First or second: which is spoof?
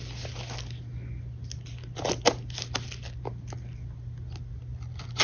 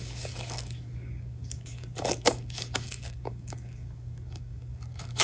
second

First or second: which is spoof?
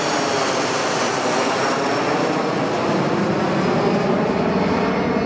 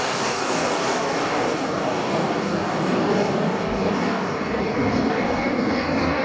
second